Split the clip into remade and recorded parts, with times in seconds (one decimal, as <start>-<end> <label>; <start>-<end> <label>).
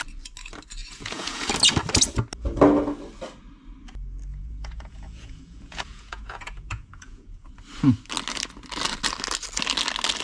0.0-0.8 recorded; 0.8-1.5 remade; 1.5-4.3 recorded; 4.3-7.5 remade; 7.5-10.2 recorded